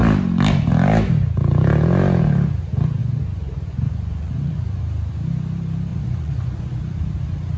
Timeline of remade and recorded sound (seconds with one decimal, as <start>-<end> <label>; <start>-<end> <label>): 0.0-3.0 recorded; 3.0-4.8 remade; 4.8-5.9 recorded; 5.9-6.8 remade; 6.8-7.6 recorded